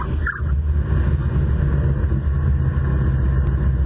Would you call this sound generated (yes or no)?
no